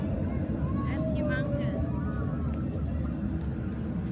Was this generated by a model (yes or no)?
no